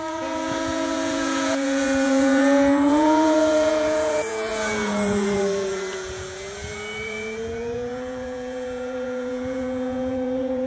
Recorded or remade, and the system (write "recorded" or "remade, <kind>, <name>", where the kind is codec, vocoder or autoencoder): remade, vocoder, Vocos